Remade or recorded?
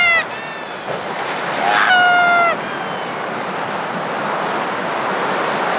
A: recorded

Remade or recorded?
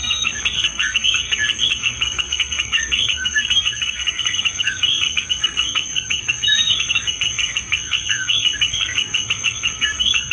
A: remade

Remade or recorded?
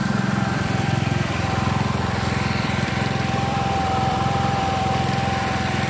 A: remade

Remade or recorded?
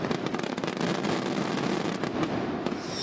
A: recorded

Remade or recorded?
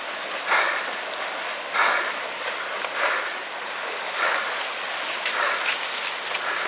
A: recorded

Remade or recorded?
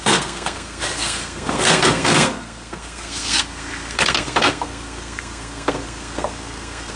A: remade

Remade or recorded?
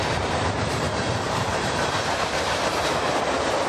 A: remade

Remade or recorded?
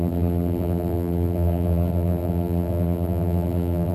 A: remade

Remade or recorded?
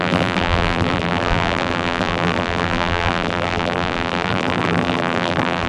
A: remade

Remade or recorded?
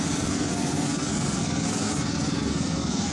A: remade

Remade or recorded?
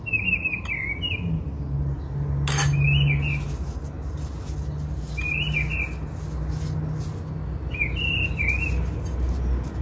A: recorded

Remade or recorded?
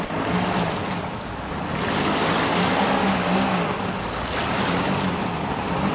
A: recorded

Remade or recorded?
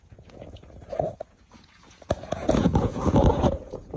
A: remade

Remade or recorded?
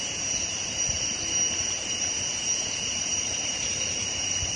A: remade